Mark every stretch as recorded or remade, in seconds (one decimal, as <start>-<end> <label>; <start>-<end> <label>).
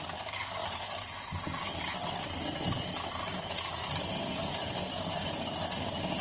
0.0-6.2 recorded